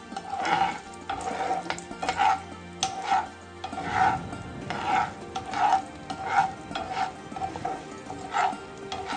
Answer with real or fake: real